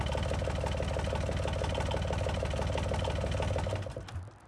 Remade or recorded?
recorded